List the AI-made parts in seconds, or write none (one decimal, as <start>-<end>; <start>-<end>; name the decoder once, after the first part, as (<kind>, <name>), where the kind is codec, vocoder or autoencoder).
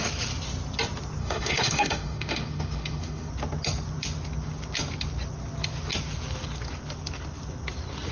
1.2-3.3 (autoencoder, DAC-VAE)